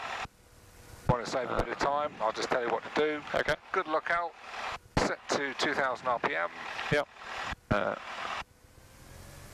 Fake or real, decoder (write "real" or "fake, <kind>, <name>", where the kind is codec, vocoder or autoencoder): real